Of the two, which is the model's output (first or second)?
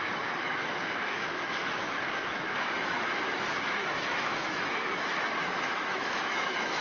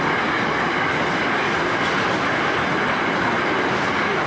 first